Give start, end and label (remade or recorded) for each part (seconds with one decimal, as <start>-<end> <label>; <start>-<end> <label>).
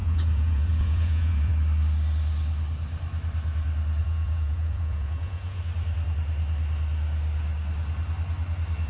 0.0-1.5 remade; 1.5-4.0 recorded; 4.0-5.6 remade; 5.6-8.9 recorded